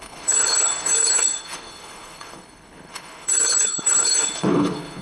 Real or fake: fake